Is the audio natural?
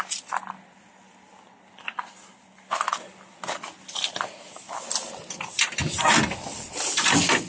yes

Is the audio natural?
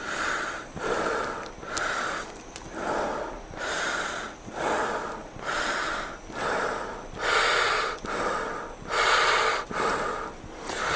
yes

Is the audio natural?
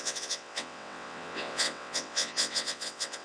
no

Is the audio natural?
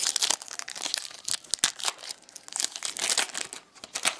yes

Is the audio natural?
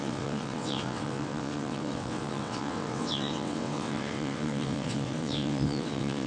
no